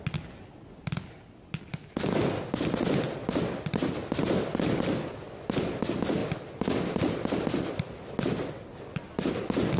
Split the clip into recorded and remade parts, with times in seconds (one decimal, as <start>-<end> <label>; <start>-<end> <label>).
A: 0.0-1.7 recorded; 1.7-2.2 remade; 2.2-9.8 recorded